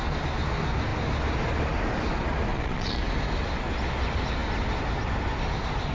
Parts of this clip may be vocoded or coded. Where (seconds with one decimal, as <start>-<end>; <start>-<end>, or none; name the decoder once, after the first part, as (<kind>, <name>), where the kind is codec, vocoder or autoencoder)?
2.5-3.0 (vocoder, Vocos)